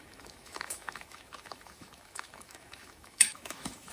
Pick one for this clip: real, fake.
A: fake